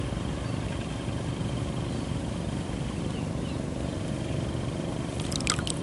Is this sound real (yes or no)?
yes